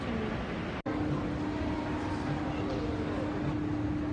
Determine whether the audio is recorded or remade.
recorded